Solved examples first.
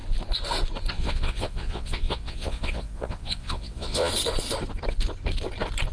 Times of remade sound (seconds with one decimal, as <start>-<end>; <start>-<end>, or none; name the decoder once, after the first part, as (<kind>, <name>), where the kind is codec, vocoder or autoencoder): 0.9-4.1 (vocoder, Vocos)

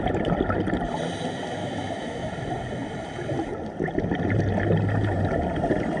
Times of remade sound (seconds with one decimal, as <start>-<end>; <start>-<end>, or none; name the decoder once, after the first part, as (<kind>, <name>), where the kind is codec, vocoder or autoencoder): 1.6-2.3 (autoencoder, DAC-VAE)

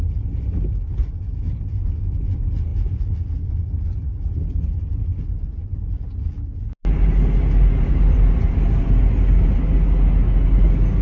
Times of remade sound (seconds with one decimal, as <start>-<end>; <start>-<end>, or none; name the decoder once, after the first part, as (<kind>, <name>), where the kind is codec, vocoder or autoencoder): none